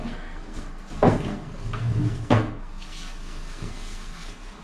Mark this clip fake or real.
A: fake